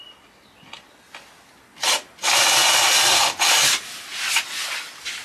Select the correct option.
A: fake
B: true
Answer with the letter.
B